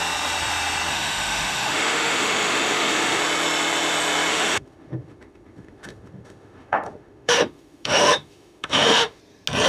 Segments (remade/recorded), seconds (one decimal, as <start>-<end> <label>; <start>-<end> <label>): 0.0-0.9 recorded; 0.9-3.2 remade; 3.2-4.3 recorded; 4.3-9.2 remade; 9.2-9.7 recorded